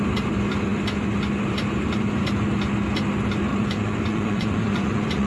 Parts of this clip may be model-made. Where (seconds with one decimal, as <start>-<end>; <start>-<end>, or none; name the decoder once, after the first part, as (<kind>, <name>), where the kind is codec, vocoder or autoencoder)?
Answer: 3.5-5.3 (vocoder, Vocos)